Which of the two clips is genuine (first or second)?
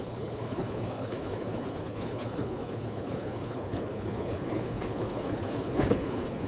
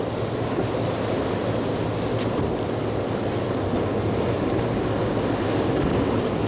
second